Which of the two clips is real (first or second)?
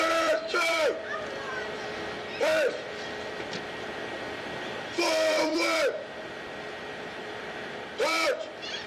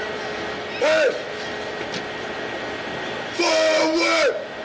second